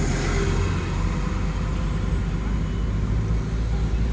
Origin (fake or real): real